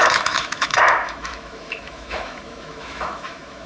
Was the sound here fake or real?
fake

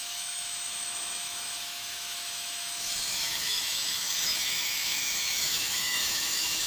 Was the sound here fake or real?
fake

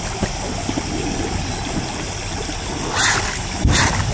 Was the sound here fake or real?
real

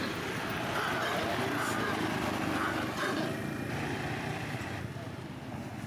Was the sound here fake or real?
real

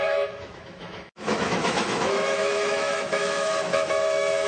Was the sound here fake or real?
fake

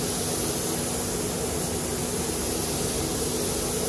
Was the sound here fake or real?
real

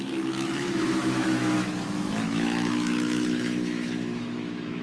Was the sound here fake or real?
fake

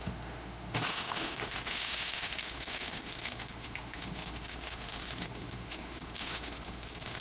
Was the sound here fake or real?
fake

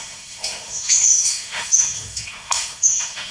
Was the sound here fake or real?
fake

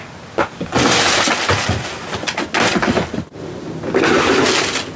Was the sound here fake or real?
real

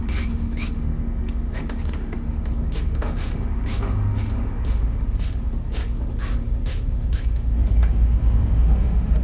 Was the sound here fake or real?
fake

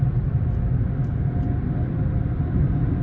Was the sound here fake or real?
real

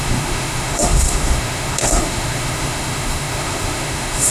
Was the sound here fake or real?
fake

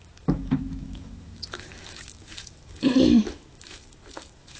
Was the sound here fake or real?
fake